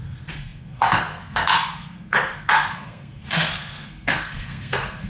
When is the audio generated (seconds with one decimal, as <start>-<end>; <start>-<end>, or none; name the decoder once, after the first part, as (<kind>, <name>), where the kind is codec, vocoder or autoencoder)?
0.0-5.1 (codec, SNAC)